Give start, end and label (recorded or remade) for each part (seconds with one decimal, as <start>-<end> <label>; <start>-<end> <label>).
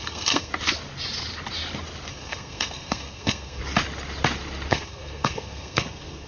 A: 0.0-0.5 remade; 0.5-2.1 recorded; 2.1-3.6 remade; 3.6-4.7 recorded; 4.7-6.3 remade